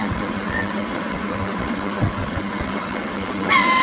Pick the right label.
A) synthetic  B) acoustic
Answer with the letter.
A